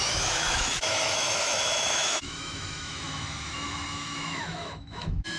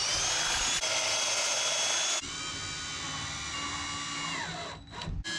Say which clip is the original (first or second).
second